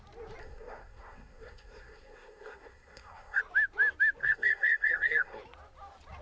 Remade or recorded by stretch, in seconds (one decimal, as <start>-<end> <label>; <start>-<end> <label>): 0.0-0.4 recorded; 0.4-3.4 remade; 3.4-4.2 recorded; 4.2-5.4 remade; 5.4-6.2 recorded